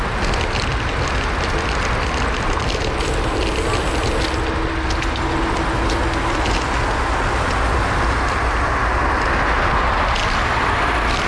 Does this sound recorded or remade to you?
recorded